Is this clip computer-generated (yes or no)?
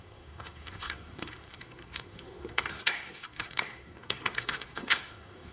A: yes